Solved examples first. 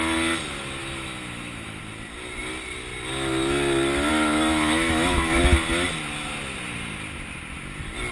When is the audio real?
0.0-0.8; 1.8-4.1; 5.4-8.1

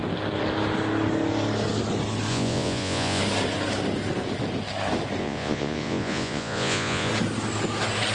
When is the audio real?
0.0-2.3; 3.2-5.2; 7.1-8.1

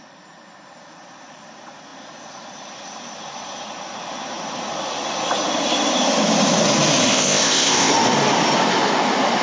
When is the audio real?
0.0-7.1; 7.9-9.4

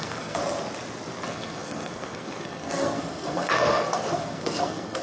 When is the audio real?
0.4-1.2

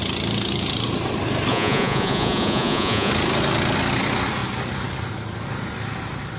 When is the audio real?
0.0-1.5; 3.1-6.4

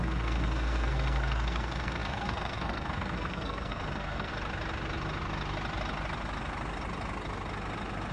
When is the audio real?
4.3-8.1

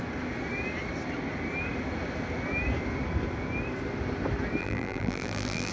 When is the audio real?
0.0-4.6